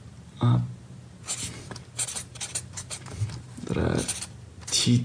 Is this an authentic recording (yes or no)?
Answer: no